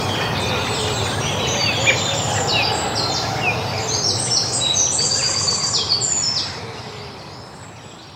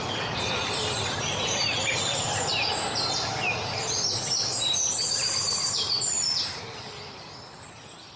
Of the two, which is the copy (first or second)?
second